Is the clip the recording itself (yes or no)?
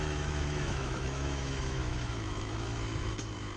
no